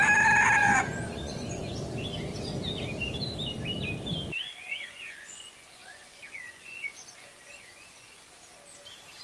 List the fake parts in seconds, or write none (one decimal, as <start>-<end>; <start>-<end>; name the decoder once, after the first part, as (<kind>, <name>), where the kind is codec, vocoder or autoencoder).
0.6-1.9 (vocoder, Vocos); 4.2-8.3